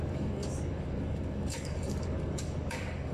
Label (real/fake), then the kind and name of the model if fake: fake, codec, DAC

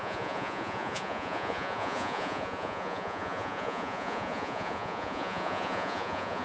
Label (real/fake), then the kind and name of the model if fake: fake, vocoder, Vocos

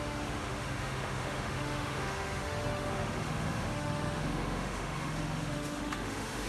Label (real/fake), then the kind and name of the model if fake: fake, autoencoder, DAC-VAE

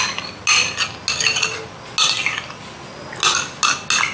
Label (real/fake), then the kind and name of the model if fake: real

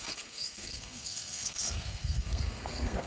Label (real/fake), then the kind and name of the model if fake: fake, codec, SNAC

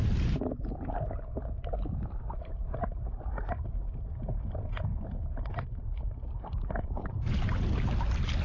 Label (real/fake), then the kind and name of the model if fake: real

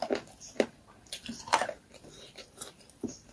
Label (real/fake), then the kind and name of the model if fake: real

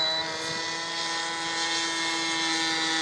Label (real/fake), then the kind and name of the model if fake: real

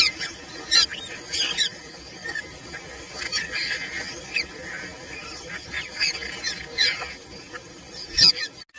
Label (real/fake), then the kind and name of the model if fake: real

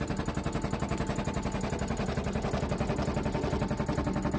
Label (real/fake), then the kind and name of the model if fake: real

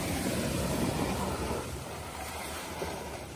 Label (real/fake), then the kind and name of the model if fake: fake, vocoder, BigVGAN v2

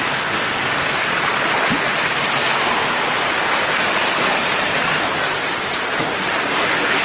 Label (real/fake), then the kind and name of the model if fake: real